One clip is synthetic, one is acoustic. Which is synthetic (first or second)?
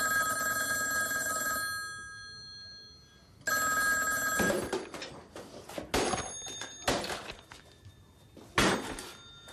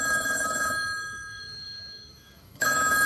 second